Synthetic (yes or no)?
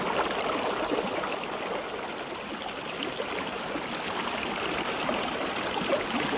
no